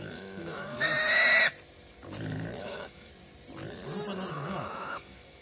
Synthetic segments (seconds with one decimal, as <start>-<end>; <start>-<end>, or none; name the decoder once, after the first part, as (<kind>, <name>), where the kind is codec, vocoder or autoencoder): 0.0-0.9 (autoencoder, DAC-VAE); 2.6-3.1; 4.3-5.4